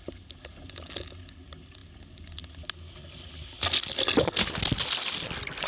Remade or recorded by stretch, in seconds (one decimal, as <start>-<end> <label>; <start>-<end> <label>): 0.0-5.7 recorded